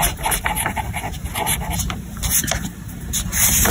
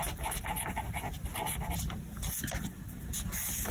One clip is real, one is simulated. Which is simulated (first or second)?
first